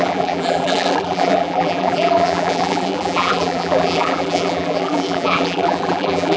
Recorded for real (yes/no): no